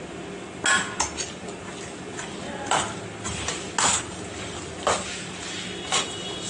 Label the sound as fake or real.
real